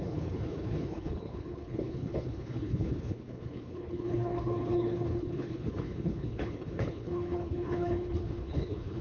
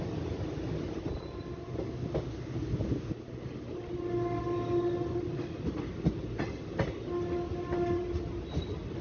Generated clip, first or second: first